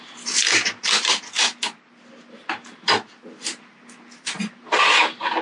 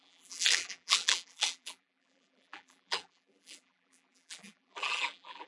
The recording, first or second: first